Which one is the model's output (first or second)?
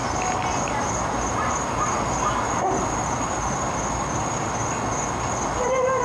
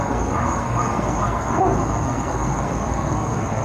second